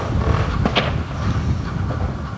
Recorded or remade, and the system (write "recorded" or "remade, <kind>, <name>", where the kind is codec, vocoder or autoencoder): recorded